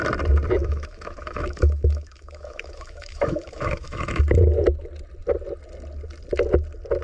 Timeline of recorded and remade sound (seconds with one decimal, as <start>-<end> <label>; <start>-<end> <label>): 0.0-0.6 recorded; 0.6-4.2 remade; 4.2-7.0 recorded